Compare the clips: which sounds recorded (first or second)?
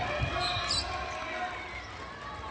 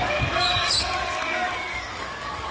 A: first